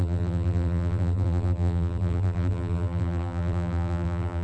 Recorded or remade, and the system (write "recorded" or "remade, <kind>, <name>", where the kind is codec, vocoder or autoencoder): remade, vocoder, BigVGAN v2